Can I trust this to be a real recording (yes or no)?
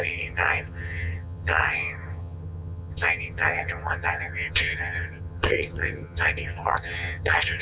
no